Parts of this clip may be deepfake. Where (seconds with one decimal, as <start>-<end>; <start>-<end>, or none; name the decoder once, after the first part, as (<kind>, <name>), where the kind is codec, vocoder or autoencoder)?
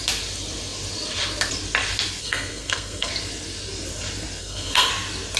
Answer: 2.2-3.1 (codec, SNAC); 4.4-4.9